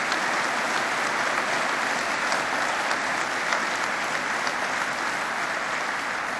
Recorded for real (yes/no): yes